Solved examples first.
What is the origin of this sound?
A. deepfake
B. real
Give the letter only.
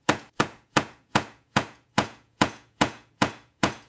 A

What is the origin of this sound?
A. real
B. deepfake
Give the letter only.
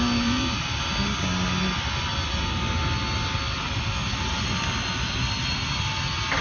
A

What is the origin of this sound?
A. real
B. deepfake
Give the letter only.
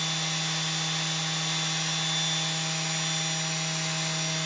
A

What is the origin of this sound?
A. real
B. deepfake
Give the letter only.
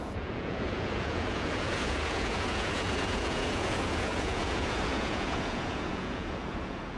B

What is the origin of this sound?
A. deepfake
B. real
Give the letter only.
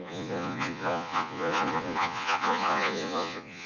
A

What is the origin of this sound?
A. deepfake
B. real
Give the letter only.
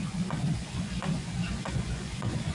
A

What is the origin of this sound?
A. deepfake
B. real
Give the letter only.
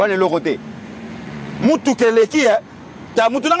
A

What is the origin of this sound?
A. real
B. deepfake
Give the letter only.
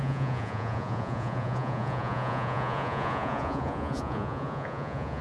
B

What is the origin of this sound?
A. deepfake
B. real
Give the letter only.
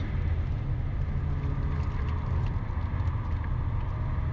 B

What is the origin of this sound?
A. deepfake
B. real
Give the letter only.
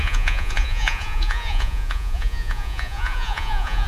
A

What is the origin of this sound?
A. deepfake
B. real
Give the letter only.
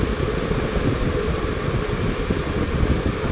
B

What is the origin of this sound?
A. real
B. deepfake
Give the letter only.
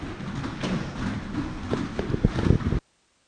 A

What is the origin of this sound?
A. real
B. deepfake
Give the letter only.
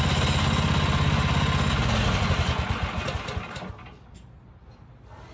A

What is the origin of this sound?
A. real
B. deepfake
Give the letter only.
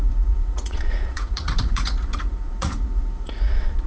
B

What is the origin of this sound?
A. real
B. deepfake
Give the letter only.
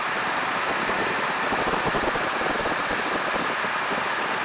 A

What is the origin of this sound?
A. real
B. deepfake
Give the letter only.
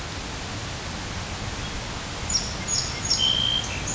A